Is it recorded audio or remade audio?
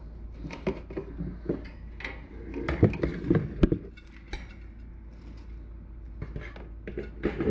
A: recorded